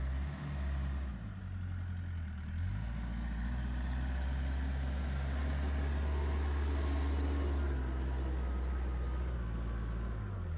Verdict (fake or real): real